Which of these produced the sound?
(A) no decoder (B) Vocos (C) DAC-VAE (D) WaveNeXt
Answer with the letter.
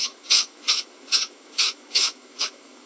C